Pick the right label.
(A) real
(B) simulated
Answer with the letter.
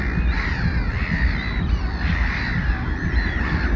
A